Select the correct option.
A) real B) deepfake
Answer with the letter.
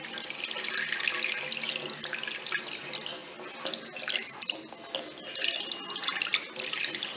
A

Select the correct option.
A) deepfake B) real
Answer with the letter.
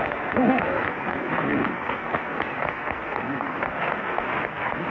A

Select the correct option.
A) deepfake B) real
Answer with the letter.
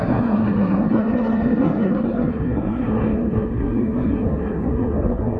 A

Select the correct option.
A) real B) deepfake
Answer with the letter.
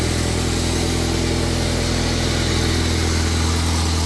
A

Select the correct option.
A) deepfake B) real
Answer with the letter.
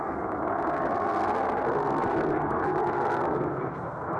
A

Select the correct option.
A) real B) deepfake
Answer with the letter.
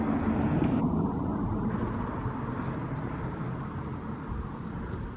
A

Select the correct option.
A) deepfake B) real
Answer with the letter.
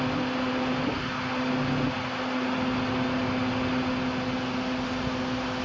B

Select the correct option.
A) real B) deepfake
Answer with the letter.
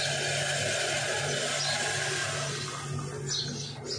A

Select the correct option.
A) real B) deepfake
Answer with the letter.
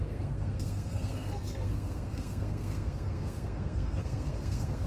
B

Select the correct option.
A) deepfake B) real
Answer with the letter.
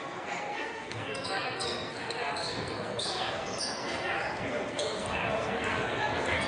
A